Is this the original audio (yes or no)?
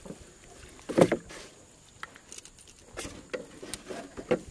yes